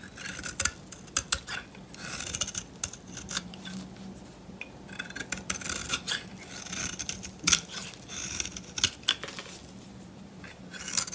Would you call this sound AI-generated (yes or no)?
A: no